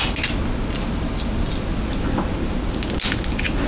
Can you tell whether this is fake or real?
real